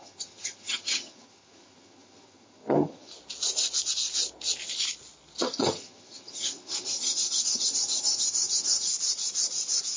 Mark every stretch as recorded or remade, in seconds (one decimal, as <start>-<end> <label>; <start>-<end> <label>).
0.0-3.1 remade; 3.1-5.4 recorded; 5.4-8.9 remade; 8.9-10.0 recorded